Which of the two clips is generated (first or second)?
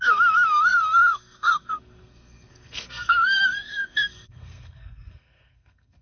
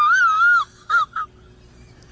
first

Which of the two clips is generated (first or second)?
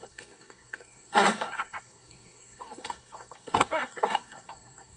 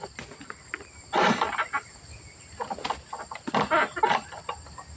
first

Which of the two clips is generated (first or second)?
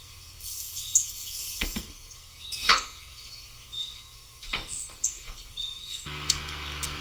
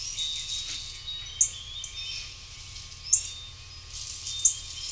first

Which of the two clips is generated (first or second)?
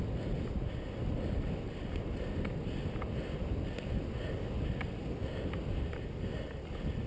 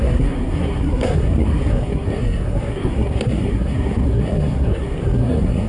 second